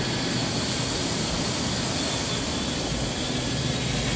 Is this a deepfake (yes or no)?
no